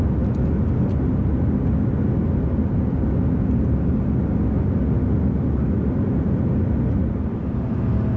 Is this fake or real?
real